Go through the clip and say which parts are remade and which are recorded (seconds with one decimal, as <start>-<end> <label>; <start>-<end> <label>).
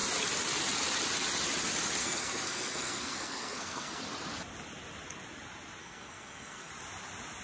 0.0-2.0 recorded; 2.0-4.0 remade; 4.0-5.8 recorded; 5.8-6.7 remade; 6.7-7.4 recorded